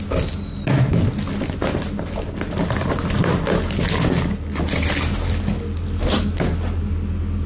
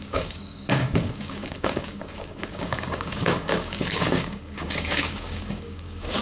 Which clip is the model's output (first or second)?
second